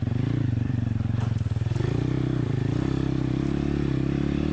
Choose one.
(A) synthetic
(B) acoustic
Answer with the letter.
A